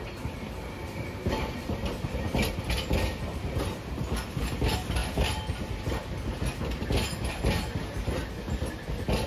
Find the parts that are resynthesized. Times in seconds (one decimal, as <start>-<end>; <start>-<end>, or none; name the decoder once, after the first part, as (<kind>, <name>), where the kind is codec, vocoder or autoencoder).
none